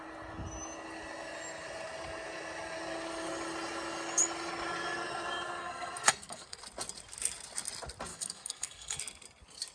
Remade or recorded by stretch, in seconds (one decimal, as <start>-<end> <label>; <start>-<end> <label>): 0.0-5.6 recorded; 5.6-6.6 remade; 6.6-8.1 recorded; 8.1-9.0 remade; 9.0-9.7 recorded